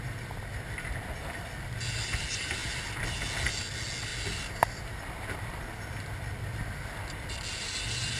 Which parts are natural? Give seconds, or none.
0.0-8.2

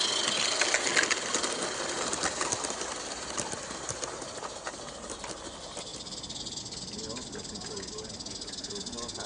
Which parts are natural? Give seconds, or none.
0.0-9.3